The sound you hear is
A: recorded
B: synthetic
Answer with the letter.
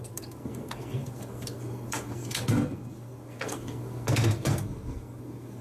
B